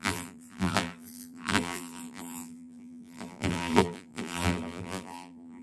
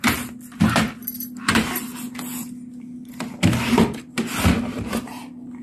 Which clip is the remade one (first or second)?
first